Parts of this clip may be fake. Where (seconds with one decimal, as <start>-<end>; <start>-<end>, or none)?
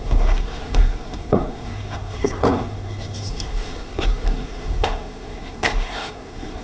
0.0-6.6